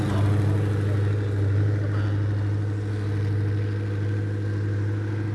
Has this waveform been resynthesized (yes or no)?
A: no